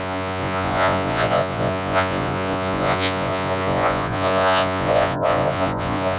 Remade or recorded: remade